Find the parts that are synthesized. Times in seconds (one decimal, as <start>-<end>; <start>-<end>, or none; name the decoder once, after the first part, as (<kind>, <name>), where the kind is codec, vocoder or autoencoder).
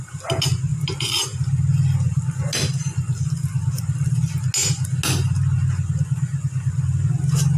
none